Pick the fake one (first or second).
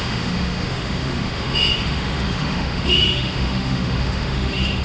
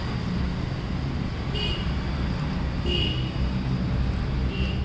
first